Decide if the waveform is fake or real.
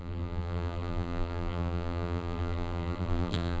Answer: fake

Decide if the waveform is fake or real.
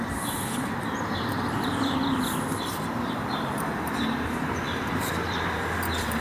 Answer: fake